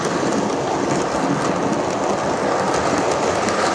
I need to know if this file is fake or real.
real